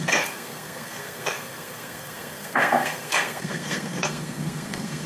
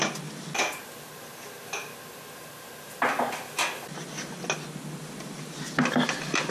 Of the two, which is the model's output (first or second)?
first